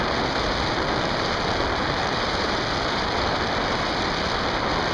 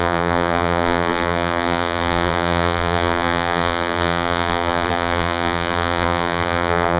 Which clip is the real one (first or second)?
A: first